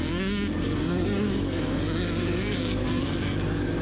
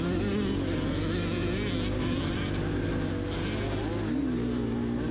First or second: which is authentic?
second